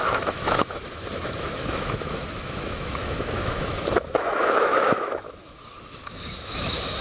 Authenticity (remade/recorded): remade